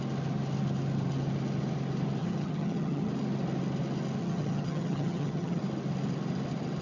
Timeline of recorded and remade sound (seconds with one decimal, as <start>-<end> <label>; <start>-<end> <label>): 0.0-2.2 recorded; 2.2-3.1 remade; 3.1-4.2 recorded; 4.2-5.6 remade; 5.6-6.8 recorded

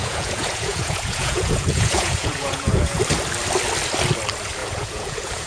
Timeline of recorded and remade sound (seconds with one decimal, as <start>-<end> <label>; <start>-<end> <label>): 0.0-3.0 remade; 3.0-4.6 recorded; 4.6-5.5 remade

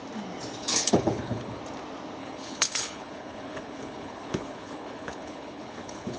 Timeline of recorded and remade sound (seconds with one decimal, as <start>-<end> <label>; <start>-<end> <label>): 0.0-0.6 recorded; 0.6-1.6 remade; 1.6-2.2 recorded; 2.2-6.2 remade

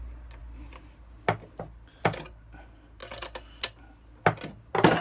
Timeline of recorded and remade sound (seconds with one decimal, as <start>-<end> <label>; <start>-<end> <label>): 0.0-5.0 recorded